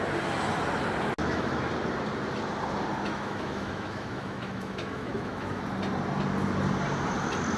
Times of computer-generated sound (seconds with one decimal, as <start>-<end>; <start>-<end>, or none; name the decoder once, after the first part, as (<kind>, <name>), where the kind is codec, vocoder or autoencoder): 1.2-1.7 (autoencoder, DAC-VAE); 3.1-5.6